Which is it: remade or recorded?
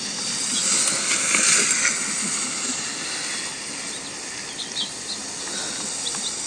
recorded